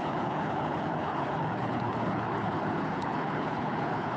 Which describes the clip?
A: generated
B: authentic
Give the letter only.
A